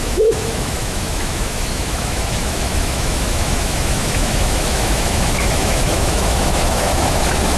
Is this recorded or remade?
remade